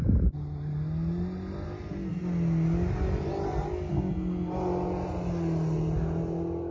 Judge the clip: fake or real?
real